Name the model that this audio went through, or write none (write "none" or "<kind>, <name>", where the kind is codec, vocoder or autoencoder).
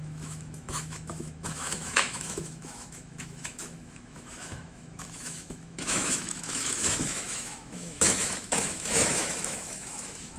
autoencoder, DAC-VAE